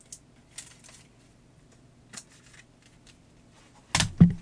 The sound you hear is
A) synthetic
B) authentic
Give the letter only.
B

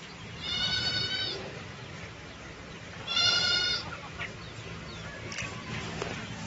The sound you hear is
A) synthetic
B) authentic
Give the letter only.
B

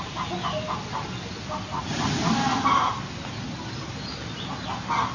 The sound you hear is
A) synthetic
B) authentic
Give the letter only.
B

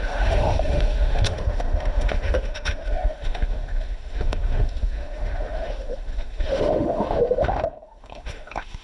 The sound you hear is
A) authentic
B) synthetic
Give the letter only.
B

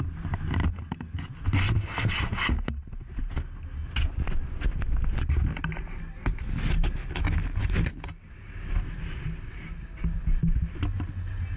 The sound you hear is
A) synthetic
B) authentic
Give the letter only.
B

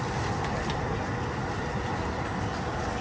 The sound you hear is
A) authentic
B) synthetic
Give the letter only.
A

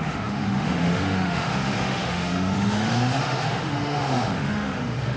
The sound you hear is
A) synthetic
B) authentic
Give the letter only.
A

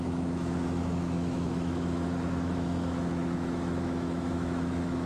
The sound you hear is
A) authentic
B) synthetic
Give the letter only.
B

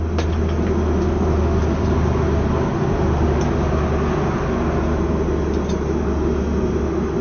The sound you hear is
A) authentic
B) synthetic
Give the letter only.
A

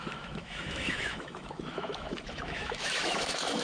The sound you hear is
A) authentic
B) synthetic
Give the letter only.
B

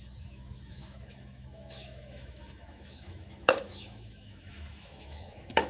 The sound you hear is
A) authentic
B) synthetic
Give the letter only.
B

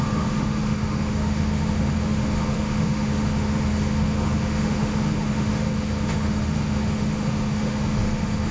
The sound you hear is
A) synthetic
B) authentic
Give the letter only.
A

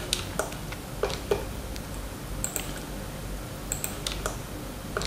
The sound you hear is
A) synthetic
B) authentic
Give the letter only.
B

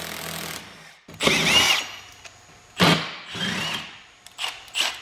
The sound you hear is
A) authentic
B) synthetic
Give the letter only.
A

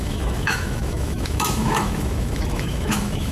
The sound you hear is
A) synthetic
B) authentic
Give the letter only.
A